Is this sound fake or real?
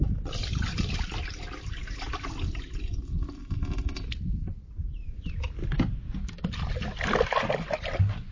real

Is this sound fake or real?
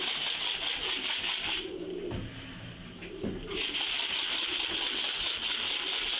real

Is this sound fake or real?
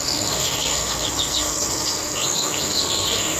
fake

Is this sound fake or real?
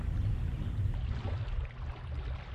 real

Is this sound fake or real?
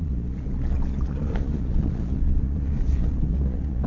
fake